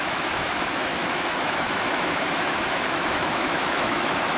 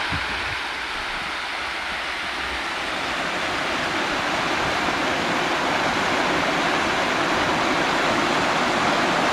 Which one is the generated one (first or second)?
first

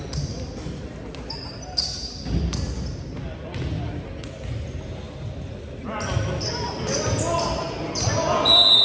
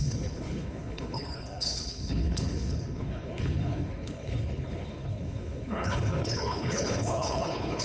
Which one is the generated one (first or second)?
second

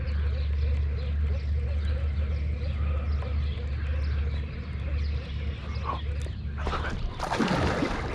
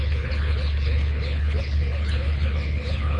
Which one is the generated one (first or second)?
second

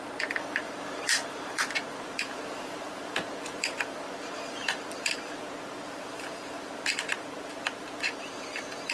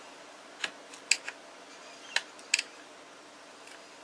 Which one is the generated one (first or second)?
first